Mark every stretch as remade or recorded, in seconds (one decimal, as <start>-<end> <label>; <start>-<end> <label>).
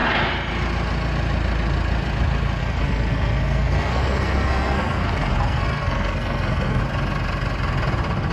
0.0-2.6 recorded; 2.6-6.8 remade; 6.8-8.3 recorded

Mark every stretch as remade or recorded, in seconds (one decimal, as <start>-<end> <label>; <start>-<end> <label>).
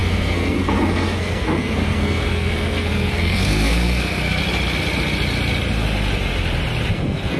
0.0-4.4 remade; 4.4-6.9 recorded; 6.9-7.4 remade